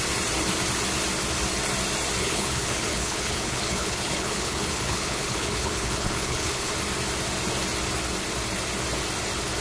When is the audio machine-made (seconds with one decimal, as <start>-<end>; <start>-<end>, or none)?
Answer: 2.2-6.7